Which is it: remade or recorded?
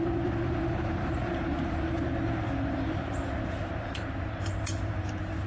remade